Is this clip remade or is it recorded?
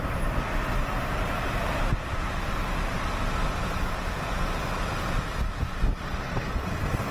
recorded